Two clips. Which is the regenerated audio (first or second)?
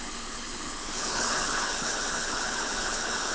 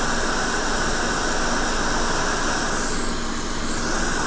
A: first